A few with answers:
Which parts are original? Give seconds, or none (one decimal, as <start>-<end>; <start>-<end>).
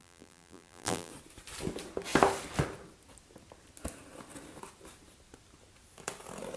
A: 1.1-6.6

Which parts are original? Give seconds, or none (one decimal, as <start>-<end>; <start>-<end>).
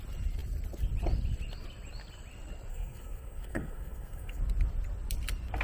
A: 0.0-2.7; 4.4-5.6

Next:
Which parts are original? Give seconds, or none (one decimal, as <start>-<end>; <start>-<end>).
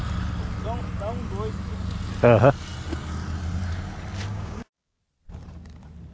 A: 0.0-4.3; 5.0-6.1